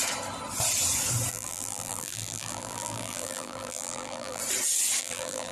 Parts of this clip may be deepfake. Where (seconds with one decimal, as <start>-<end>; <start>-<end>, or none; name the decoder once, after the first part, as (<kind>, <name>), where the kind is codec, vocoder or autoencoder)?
1.3-4.4 (vocoder, BigVGAN v2); 5.0-5.5